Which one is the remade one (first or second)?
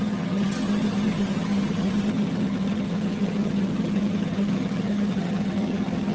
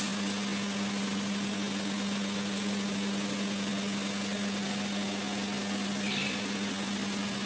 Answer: first